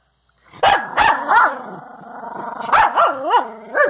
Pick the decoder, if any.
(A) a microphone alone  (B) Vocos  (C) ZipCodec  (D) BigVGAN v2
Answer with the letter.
A